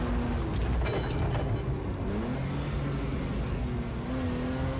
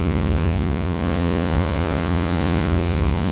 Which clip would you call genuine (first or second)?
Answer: first